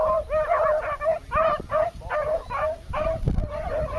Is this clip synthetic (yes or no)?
no